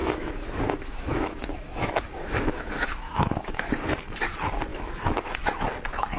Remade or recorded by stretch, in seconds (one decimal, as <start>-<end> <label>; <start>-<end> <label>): 0.0-3.7 remade; 3.7-4.7 recorded; 4.7-5.3 remade; 5.3-6.2 recorded